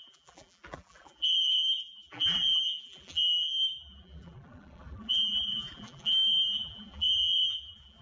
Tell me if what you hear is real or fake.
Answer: fake